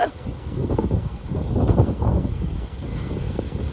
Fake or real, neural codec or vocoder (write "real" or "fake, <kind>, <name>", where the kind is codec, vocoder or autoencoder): fake, codec, SNAC